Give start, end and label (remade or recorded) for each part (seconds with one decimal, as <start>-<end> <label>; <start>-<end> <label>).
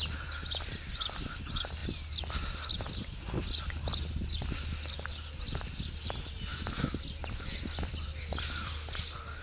0.0-9.4 recorded